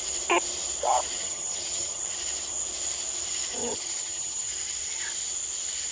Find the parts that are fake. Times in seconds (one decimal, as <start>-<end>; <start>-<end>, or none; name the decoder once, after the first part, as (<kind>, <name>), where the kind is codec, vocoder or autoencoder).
1.2-2.0 (vocoder, HiFi-GAN); 3.6-4.5